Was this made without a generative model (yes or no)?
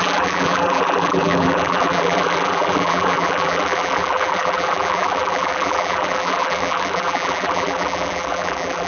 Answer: no